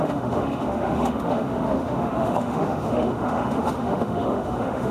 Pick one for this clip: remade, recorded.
remade